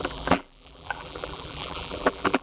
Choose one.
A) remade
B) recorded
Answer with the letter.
A